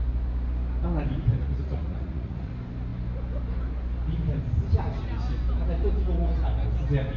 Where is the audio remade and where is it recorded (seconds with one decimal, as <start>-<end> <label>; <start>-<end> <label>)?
0.0-1.4 recorded; 1.4-2.5 remade; 2.5-7.2 recorded